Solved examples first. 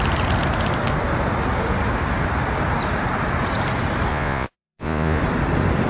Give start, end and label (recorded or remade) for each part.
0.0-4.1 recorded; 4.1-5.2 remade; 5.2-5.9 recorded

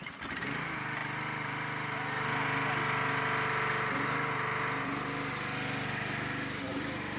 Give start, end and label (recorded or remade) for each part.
0.0-7.2 recorded

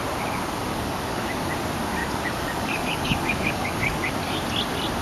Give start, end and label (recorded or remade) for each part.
0.0-0.7 recorded; 0.7-1.5 remade; 1.5-2.0 recorded; 2.0-4.1 remade; 4.1-5.0 recorded

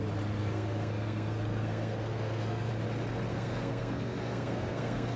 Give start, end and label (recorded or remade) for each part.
0.0-0.4 recorded; 0.4-2.7 remade; 2.7-3.3 recorded; 3.3-5.2 remade

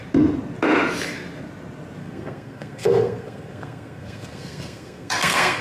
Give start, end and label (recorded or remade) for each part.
0.0-2.0 recorded; 2.0-5.6 remade